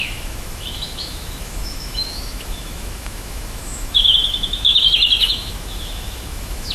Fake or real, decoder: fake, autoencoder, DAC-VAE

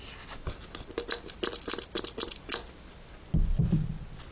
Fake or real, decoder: real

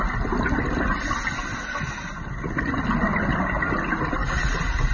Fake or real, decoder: real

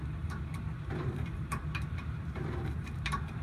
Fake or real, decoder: fake, vocoder, BigVGAN v2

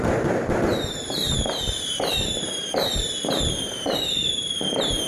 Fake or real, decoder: fake, vocoder, BigVGAN v2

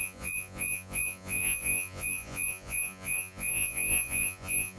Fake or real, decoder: fake, vocoder, Vocos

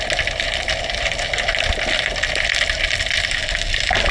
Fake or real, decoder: real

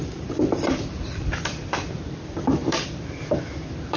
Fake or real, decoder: fake, vocoder, BigVGAN v2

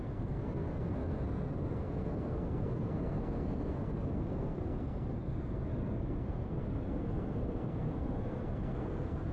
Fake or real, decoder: fake, codec, SNAC